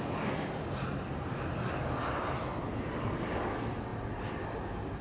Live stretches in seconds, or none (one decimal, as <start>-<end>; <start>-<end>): 0.0-5.0